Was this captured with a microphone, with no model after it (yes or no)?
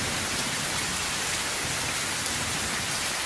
yes